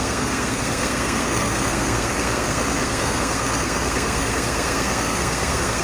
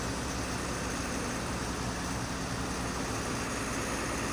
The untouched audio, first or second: second